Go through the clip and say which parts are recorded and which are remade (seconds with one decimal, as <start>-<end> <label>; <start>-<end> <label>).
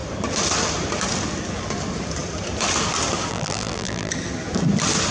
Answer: 0.0-3.3 recorded; 3.3-4.1 remade; 4.1-5.1 recorded